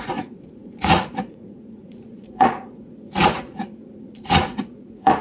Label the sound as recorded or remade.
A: remade